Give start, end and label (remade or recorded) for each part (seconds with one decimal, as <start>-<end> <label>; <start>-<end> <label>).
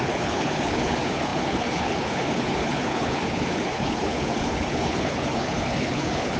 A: 0.0-6.4 remade